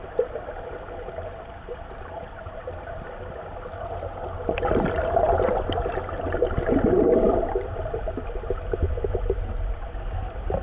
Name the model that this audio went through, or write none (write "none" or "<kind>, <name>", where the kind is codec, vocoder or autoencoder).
none